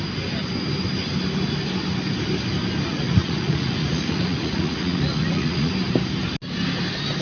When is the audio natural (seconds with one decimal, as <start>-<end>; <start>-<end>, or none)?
0.0-2.9; 5.7-7.2